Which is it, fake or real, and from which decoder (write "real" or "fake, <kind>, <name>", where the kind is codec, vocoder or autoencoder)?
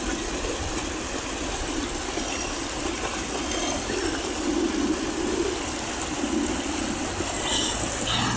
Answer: real